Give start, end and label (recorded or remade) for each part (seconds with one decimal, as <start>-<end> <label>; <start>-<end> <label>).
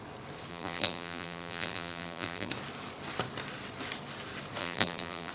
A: 0.0-0.5 recorded; 0.5-2.5 remade; 2.5-4.6 recorded; 4.6-5.3 remade